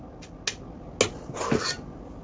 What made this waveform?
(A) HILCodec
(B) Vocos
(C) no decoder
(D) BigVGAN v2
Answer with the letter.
C